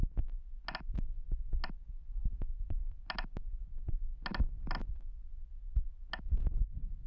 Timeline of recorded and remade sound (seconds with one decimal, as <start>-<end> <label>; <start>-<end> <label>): 0.0-7.1 recorded